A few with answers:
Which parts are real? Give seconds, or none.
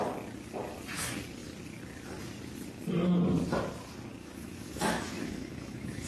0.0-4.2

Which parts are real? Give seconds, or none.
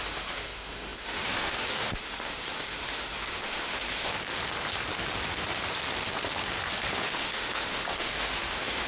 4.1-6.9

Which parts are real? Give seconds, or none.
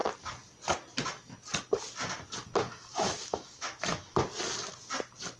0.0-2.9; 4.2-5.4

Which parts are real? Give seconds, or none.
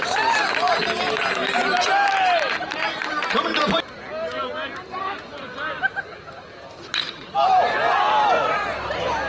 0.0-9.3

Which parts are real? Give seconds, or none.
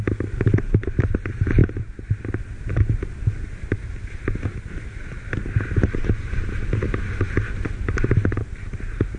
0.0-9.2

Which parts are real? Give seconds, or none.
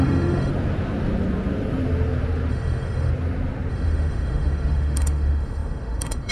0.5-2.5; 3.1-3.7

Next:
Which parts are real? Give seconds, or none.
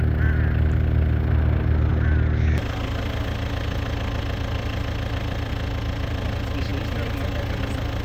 0.0-8.0